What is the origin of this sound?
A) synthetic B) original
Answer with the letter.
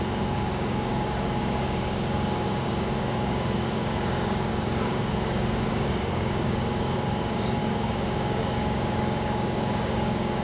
A